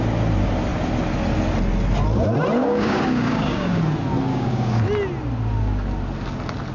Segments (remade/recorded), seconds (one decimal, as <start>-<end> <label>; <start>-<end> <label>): 0.0-2.6 recorded; 2.6-3.8 remade; 3.8-4.3 recorded; 4.3-4.8 remade; 4.8-6.7 recorded

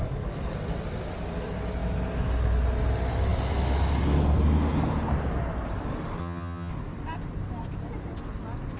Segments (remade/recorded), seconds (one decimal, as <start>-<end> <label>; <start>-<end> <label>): 0.0-6.2 recorded; 6.2-6.7 remade; 6.7-8.8 recorded

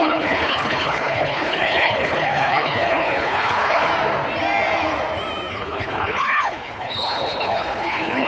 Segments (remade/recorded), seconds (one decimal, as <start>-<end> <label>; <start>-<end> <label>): 0.0-3.9 remade; 3.9-5.5 recorded; 5.5-8.3 remade

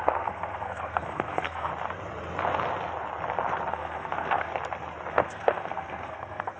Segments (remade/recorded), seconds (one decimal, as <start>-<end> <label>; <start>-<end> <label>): 0.0-1.7 remade; 1.7-3.7 recorded; 3.7-4.5 remade; 4.5-5.1 recorded; 5.1-6.6 remade

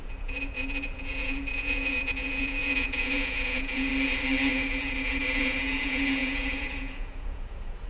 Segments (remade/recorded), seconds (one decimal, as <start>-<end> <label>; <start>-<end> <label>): 0.0-3.9 remade; 3.9-4.5 recorded; 4.5-7.9 remade

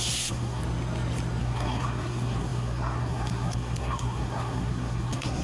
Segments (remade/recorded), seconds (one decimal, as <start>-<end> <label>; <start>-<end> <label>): 0.0-0.6 remade; 0.6-1.4 recorded; 1.4-5.4 remade